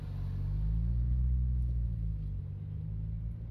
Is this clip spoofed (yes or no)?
no